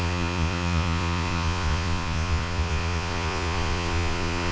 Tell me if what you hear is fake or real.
fake